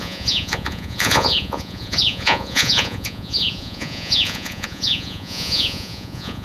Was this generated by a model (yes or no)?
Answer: yes